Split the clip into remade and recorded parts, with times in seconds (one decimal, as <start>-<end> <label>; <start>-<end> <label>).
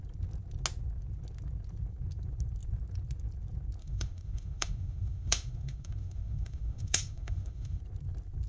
0.0-3.8 recorded; 3.8-7.8 remade; 7.8-8.5 recorded